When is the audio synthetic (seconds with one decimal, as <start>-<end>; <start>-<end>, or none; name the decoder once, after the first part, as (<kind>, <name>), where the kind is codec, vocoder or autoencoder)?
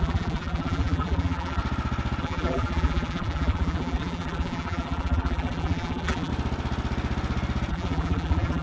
0.0-1.6 (vocoder, BigVGAN v2); 2.2-6.3; 7.7-8.6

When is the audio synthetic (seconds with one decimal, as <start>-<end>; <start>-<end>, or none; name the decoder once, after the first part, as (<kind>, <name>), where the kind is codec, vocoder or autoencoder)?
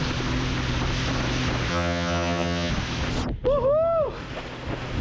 1.7-2.7 (vocoder, HiFi-GAN)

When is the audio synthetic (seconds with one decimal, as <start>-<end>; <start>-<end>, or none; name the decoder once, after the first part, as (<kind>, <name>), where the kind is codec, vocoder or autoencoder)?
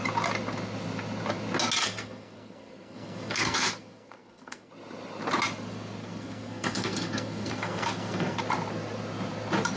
1.8-4.7 (codec, SNAC); 6.0-8.4